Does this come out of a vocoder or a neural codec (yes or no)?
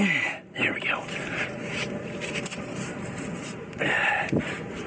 yes